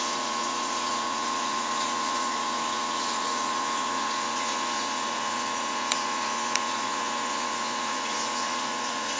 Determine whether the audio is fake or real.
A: fake